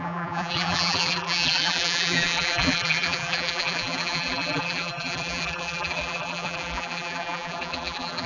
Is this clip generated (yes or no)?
yes